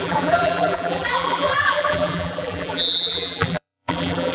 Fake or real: fake